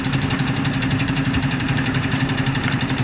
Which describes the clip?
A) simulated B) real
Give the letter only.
A